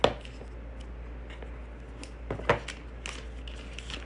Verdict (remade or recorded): recorded